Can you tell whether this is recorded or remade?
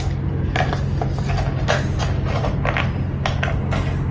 recorded